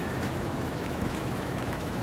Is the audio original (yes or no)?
no